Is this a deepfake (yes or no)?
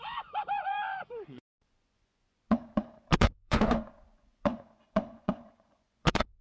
yes